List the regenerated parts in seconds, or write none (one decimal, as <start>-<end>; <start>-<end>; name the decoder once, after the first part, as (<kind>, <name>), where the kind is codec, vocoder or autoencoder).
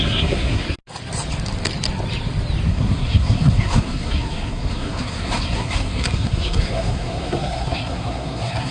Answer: 0.0-0.8 (codec, SNAC); 2.7-8.7